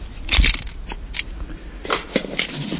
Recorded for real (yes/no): yes